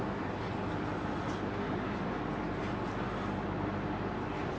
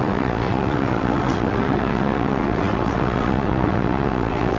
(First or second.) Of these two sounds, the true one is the first